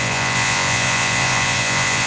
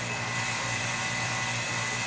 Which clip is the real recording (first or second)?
second